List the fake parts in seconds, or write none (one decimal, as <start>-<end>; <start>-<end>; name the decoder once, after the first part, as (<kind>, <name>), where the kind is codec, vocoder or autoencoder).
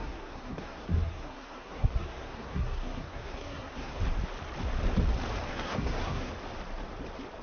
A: 0.0-4.0 (codec, SNAC); 5.5-6.3